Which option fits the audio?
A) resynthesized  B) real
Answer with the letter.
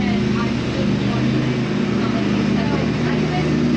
B